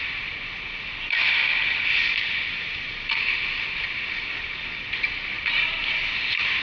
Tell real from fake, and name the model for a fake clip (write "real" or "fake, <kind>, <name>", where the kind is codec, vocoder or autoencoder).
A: real